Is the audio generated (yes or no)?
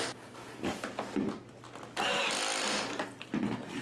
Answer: no